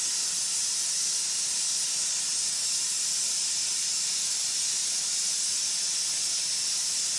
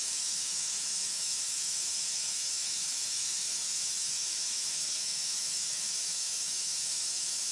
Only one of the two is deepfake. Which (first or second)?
second